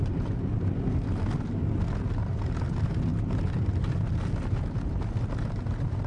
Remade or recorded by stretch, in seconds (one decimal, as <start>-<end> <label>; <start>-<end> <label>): 0.0-6.1 recorded